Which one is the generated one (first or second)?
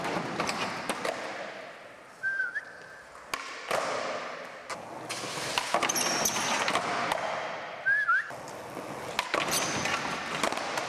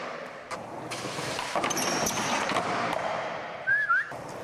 second